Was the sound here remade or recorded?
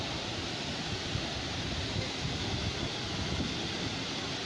recorded